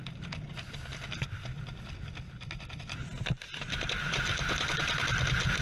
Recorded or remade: recorded